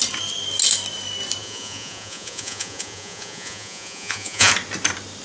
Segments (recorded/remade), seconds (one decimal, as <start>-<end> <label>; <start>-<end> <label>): 0.0-1.4 recorded; 1.4-4.5 remade; 4.5-5.2 recorded